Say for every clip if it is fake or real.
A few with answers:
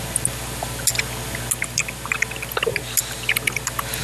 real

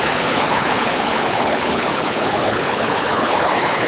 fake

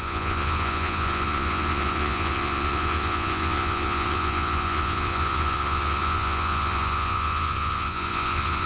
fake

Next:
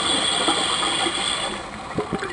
real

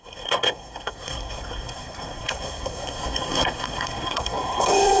fake